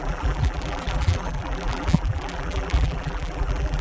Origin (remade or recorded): remade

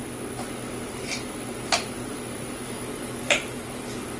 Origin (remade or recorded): recorded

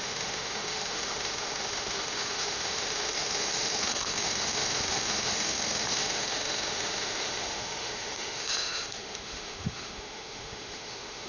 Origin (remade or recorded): remade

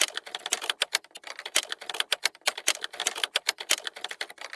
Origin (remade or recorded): recorded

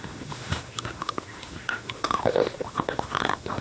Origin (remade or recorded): remade